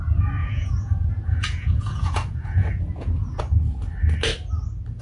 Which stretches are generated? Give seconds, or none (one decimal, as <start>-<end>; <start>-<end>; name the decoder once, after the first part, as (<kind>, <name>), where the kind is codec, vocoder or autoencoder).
0.4-3.4 (vocoder, Vocos)